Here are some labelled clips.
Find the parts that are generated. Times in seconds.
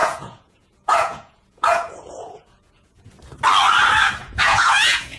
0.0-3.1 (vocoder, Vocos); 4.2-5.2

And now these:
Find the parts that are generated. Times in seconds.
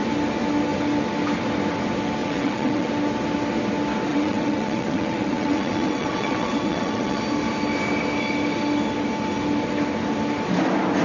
2.2-2.9 (vocoder, WaveNeXt); 4.1-7.2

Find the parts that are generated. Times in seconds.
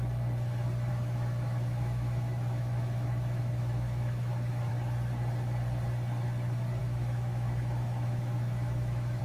0.9-4.7 (autoencoder, DAC-VAE); 6.8-9.2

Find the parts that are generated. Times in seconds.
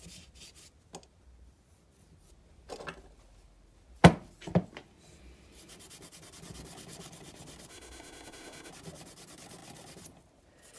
7.7-8.7 (autoencoder, DAC-VAE)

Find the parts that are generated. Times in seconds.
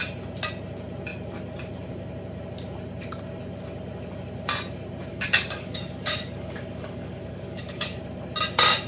5.1-8.0 (codec, DAC)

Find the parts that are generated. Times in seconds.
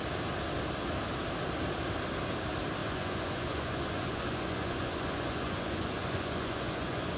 2.8-7.2 (vocoder, Vocos)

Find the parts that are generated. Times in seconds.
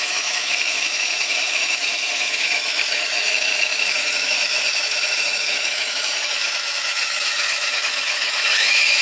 0.0-9.0 (autoencoder, DAC-VAE)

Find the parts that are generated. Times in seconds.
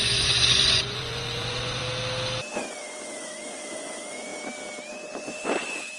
0.0-1.8 (vocoder, Vocos); 2.5-4.3; 4.9-6.0